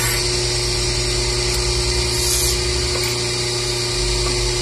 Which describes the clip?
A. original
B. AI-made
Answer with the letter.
A